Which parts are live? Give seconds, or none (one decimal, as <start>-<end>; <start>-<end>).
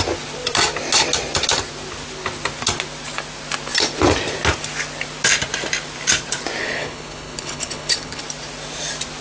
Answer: 0.0-6.6; 8.2-9.2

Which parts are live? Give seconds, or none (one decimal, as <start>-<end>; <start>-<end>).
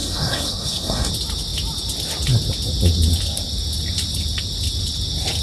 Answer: 1.1-5.4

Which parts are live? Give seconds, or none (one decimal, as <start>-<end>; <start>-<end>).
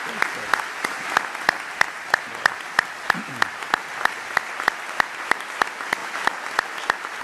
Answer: 0.0-7.2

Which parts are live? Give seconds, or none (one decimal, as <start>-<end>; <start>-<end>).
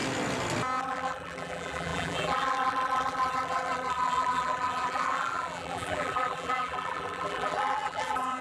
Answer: 0.0-0.8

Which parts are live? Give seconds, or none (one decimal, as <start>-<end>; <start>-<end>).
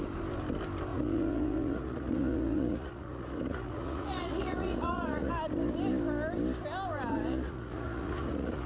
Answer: 0.0-0.9; 5.3-7.1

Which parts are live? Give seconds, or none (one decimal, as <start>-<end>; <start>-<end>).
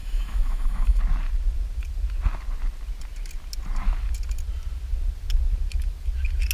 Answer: 1.0-6.5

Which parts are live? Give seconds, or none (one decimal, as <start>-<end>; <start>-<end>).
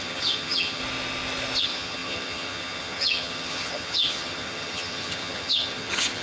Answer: 0.8-1.6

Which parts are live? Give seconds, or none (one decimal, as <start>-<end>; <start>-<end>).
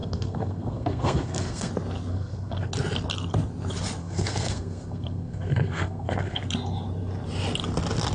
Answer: 1.7-2.1; 2.7-4.0; 6.4-8.1